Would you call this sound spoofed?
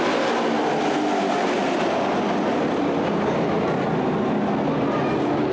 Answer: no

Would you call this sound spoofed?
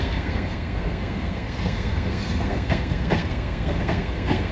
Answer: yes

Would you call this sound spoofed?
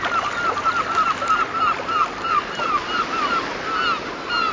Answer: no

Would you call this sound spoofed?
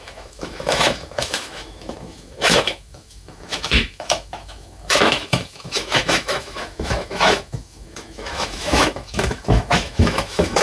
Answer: yes